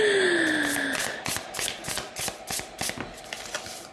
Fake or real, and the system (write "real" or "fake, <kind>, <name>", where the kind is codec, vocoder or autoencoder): real